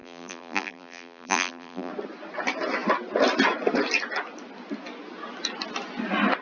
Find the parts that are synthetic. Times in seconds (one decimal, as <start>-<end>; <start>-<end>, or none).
0.0-1.9

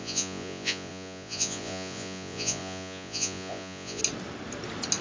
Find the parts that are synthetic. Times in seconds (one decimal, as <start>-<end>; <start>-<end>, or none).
0.0-4.0

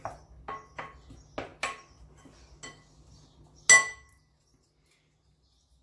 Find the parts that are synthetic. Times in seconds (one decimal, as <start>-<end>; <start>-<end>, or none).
none

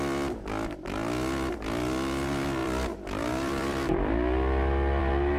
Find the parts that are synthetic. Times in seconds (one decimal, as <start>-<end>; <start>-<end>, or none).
2.6-5.0